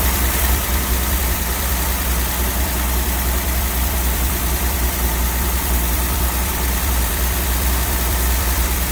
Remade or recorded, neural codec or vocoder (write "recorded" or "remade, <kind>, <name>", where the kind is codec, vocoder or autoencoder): remade, vocoder, BigVGAN v2